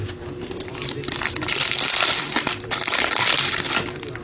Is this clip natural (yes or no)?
no